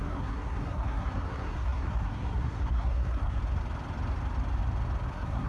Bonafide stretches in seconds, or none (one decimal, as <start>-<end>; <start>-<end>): 3.4-5.1